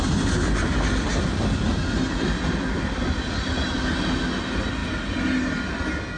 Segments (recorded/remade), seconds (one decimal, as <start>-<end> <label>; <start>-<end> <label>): 0.0-6.2 recorded